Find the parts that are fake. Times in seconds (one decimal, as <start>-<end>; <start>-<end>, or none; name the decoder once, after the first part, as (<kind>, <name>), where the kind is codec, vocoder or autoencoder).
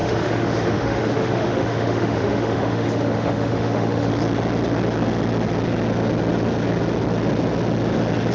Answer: 0.0-4.1 (autoencoder, DAC-VAE)